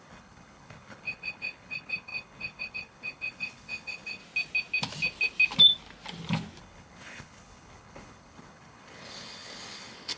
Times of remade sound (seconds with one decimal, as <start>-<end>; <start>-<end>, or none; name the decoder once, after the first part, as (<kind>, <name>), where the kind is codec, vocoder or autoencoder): 0.0-4.2 (codec, HILCodec); 6.6-10.2